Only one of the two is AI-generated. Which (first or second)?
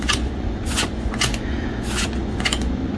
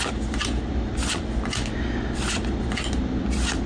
first